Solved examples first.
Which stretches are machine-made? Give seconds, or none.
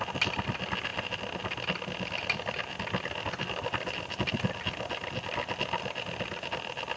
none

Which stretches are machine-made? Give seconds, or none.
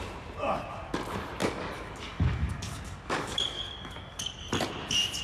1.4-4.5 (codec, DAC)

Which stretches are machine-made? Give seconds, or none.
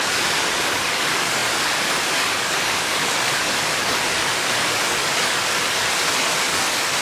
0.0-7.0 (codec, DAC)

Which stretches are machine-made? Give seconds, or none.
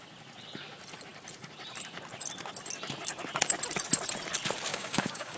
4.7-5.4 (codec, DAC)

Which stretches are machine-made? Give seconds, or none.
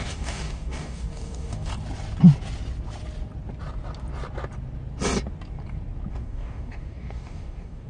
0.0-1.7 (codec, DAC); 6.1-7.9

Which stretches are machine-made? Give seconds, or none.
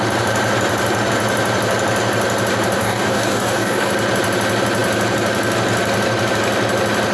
2.8-3.9 (codec, DAC)